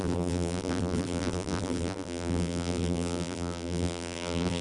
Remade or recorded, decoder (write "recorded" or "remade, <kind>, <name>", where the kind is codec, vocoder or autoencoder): remade, vocoder, BigVGAN v2